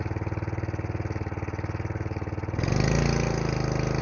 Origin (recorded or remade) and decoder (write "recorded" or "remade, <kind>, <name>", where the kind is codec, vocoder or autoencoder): recorded